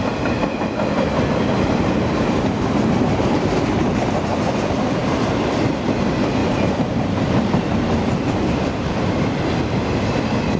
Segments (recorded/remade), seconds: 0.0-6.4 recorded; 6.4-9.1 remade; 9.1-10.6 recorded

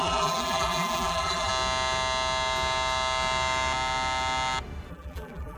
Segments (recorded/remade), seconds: 0.0-1.5 remade; 1.5-4.9 recorded; 4.9-5.6 remade

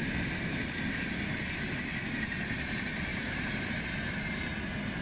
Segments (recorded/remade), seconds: 0.0-0.8 remade; 0.8-3.1 recorded; 3.1-3.8 remade; 3.8-5.0 recorded

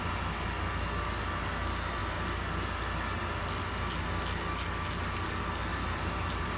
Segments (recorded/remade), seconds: 0.0-5.7 recorded; 5.7-6.6 remade

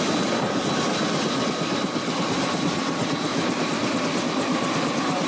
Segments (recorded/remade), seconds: 0.0-3.3 recorded; 3.3-4.0 remade; 4.0-5.3 recorded

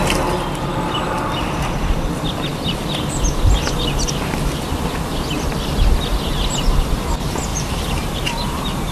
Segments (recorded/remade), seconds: 0.0-7.5 recorded; 7.5-8.9 remade

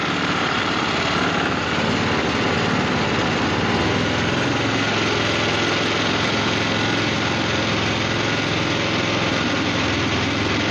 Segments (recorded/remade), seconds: 0.0-0.6 remade; 0.6-9.3 recorded; 9.3-10.7 remade

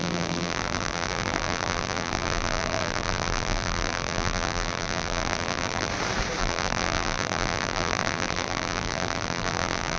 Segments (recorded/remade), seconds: 0.0-5.9 remade; 5.9-6.4 recorded; 6.4-10.0 remade